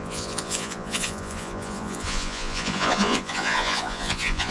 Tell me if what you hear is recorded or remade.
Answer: remade